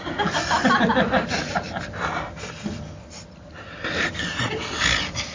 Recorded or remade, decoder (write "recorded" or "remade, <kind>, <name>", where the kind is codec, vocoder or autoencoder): recorded